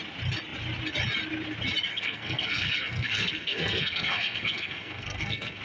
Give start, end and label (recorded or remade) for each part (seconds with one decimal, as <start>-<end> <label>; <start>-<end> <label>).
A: 0.0-1.9 recorded; 1.9-5.6 remade